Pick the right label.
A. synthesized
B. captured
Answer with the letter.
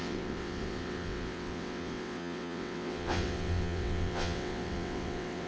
A